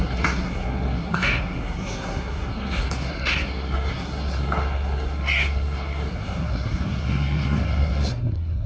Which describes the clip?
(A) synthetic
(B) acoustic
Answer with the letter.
A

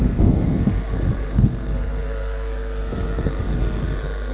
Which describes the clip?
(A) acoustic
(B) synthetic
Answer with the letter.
B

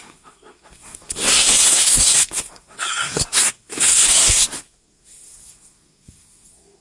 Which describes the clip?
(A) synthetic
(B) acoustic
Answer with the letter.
A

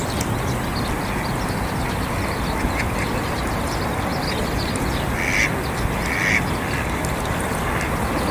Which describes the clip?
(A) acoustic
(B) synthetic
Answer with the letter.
A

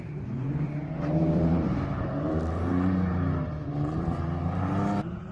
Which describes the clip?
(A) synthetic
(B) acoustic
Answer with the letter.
A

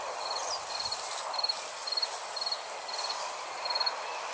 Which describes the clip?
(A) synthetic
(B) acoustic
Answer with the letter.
B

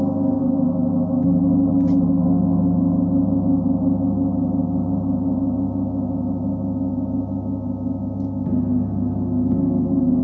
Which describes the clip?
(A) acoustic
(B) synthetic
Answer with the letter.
A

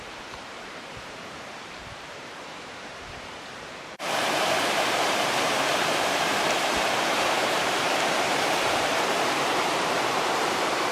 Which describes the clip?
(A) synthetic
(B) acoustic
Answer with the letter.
A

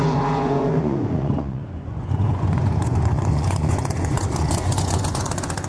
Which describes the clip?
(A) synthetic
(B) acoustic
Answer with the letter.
A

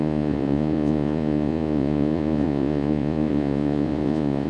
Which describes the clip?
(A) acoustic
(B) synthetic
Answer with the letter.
B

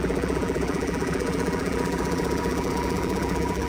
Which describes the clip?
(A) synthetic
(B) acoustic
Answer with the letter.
A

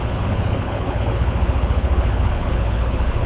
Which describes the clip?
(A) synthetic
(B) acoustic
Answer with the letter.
A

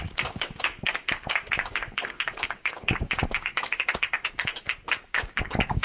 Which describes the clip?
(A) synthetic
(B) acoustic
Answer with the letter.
A